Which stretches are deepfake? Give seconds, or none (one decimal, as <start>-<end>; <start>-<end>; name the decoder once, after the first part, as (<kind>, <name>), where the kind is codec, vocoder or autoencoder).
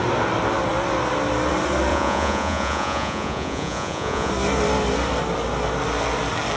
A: 1.9-4.3 (vocoder, Vocos)